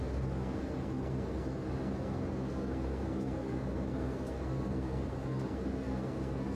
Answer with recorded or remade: remade